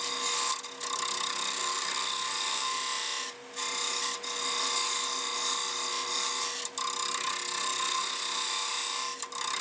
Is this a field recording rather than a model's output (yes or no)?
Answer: yes